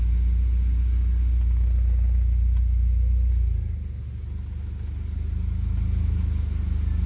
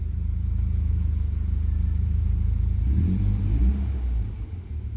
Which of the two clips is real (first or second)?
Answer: first